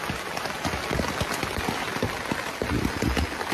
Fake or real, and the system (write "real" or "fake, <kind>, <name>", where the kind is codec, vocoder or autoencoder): real